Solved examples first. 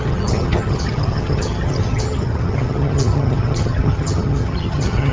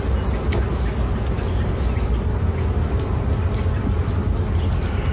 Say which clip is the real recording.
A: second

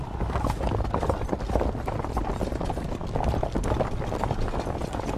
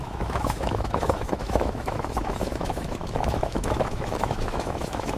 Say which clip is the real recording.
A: first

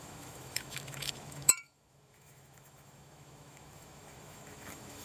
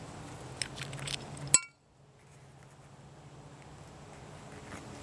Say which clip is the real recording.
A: second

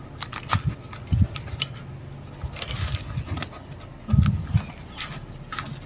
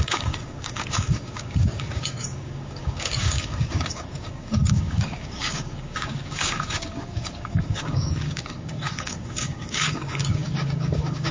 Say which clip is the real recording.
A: first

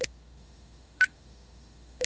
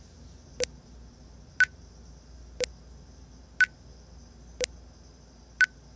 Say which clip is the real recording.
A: second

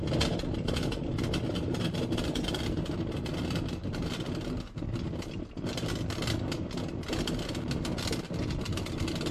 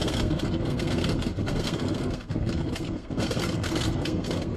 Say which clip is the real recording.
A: first